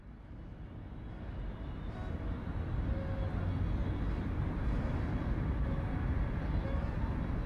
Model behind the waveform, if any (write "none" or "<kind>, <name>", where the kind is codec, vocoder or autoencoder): none